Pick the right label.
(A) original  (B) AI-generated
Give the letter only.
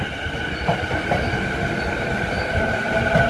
A